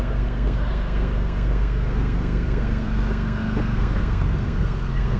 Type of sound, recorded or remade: remade